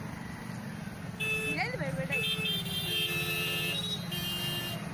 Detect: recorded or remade recorded